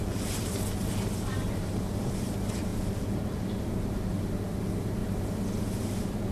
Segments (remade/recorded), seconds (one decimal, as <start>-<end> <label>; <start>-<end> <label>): 0.0-6.3 recorded